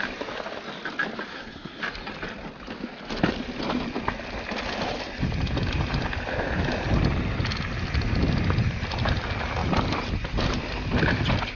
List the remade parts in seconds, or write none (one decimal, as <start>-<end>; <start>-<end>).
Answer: 1.3-1.8